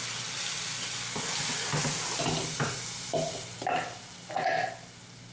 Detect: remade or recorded recorded